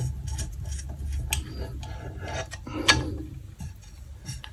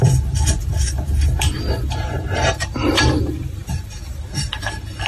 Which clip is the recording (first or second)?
first